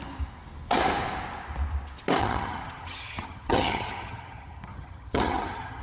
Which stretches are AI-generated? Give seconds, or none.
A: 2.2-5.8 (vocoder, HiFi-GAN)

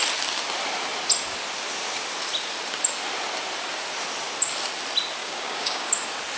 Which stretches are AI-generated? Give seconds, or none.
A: 5.2-5.9 (codec, DAC)

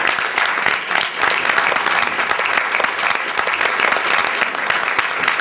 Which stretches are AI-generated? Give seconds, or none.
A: none

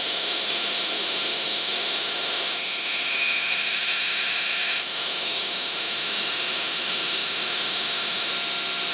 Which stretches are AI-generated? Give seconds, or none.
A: 0.0-8.3 (autoencoder, DAC-VAE)

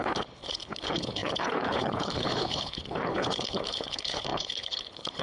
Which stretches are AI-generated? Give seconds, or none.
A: 0.0-5.2 (codec, HILCodec)

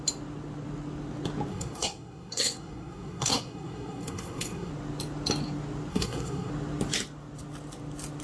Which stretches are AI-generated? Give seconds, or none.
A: 1.5-4.7 (codec, SNAC); 5.9-6.5

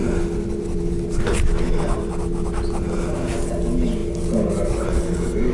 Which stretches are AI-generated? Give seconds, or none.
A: none

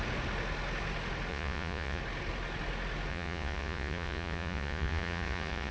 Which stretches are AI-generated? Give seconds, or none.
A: 1.3-2.0 (vocoder, Vocos); 3.1-5.7